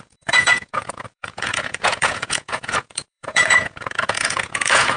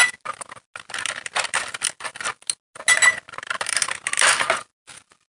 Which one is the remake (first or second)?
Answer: first